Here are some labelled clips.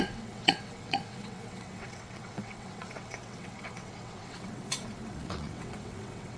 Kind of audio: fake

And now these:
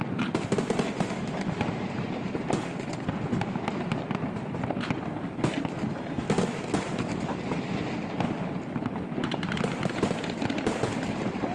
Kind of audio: real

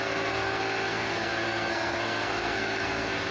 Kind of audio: fake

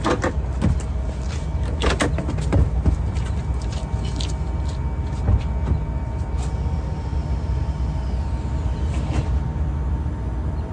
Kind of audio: real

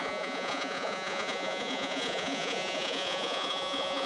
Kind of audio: fake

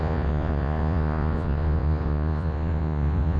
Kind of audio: fake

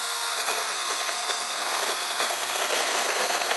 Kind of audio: fake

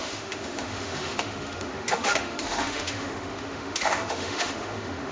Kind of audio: fake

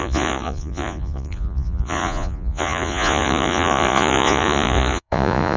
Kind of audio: fake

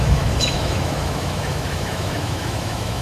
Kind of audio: fake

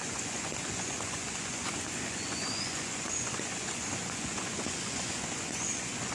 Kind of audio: fake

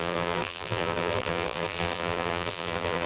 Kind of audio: fake